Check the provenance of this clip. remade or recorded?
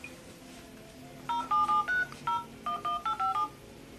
recorded